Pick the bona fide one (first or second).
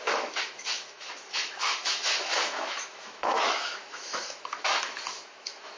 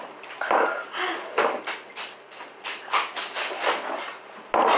second